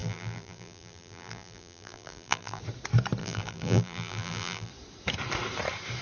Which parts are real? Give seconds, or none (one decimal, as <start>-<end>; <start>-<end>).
2.6-3.2; 4.7-6.0